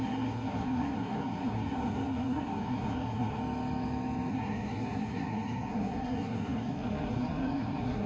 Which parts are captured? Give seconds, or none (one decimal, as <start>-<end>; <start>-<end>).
3.4-4.3